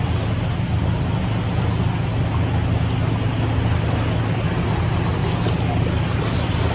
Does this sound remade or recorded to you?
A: recorded